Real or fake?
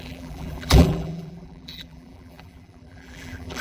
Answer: fake